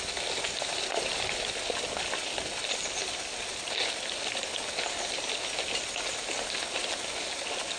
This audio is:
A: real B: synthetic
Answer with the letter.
A